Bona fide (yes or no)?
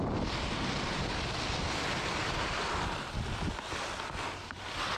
yes